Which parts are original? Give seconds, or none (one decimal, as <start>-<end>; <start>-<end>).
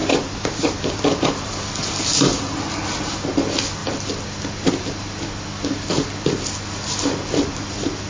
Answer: 1.3-8.1